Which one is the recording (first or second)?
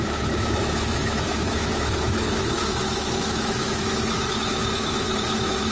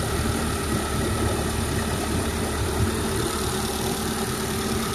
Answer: second